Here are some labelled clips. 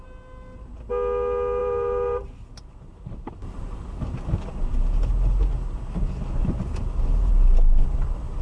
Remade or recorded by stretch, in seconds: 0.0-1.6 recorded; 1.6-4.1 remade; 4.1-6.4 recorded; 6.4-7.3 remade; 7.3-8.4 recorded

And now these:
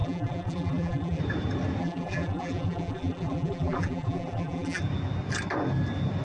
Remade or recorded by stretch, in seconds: 0.0-1.2 remade; 1.2-1.8 recorded; 1.8-4.8 remade; 4.8-6.2 recorded

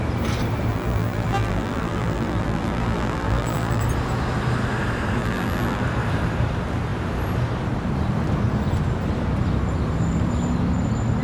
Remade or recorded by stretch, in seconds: 0.0-0.7 recorded; 0.7-3.8 remade; 3.8-5.2 recorded; 5.2-5.8 remade; 5.8-11.2 recorded

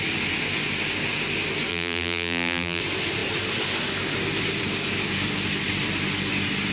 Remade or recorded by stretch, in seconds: 0.0-1.7 recorded; 1.7-2.8 remade; 2.8-6.7 recorded

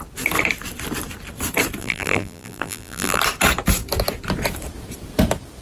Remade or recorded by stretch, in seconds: 0.0-1.8 recorded; 1.8-3.2 remade; 3.2-5.6 recorded

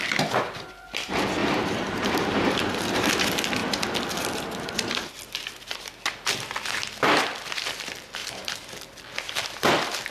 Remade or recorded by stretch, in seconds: 0.0-1.4 recorded; 1.4-2.7 remade; 2.7-10.1 recorded

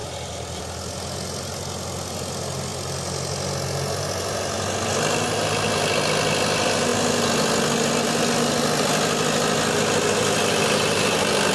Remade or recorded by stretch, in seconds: 0.0-11.5 recorded